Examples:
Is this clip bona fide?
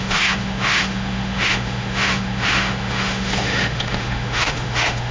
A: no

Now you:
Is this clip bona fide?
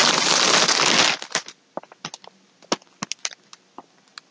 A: yes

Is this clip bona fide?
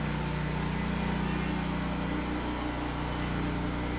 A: yes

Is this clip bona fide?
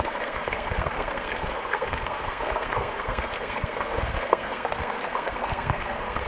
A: no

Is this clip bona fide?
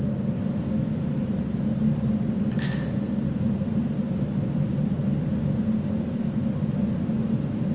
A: yes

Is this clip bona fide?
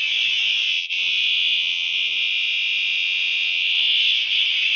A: no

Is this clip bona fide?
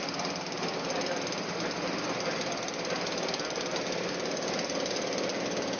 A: yes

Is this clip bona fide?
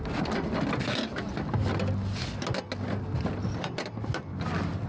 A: yes